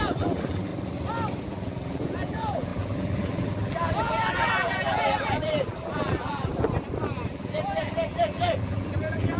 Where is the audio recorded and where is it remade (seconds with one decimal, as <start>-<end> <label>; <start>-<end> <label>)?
0.0-0.7 remade; 0.7-1.4 recorded; 1.4-6.5 remade; 6.5-7.3 recorded; 7.3-9.4 remade